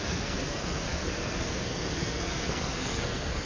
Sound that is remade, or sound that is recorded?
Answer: remade